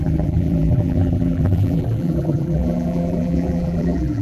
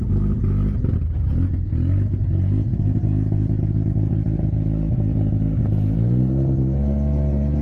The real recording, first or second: second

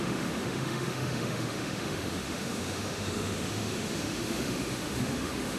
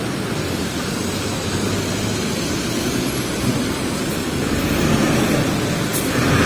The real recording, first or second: second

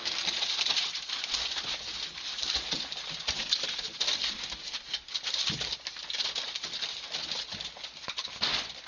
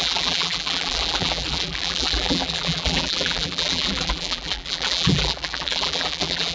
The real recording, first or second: first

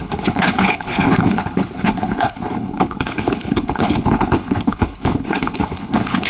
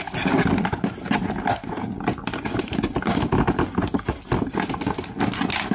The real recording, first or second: second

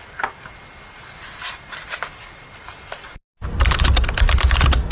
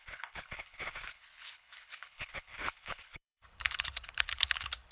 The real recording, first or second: first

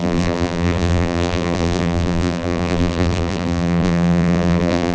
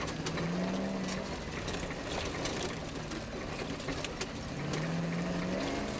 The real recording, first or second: second